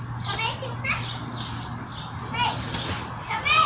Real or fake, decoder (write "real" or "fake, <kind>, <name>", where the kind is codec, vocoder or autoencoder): real